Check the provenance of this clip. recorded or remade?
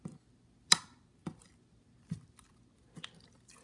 recorded